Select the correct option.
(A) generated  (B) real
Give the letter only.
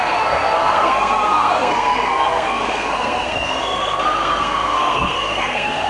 A